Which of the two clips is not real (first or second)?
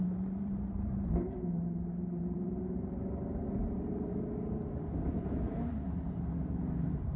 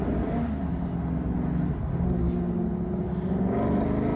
first